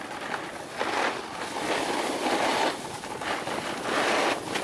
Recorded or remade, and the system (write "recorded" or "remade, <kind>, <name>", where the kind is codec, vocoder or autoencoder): recorded